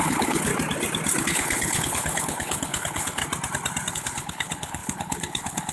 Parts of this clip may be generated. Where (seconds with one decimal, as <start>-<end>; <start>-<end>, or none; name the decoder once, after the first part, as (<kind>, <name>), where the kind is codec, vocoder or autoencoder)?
0.0-0.5 (codec, HILCodec); 1.2-3.2; 3.9-5.7